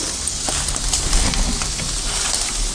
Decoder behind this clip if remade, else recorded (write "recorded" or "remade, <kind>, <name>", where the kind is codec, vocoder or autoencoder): recorded